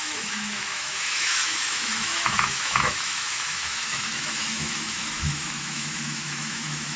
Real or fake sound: fake